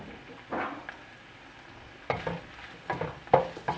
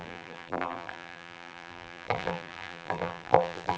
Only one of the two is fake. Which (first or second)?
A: second